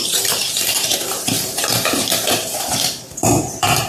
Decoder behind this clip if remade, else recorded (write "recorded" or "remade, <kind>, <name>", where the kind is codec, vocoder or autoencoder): remade, vocoder, BigVGAN v2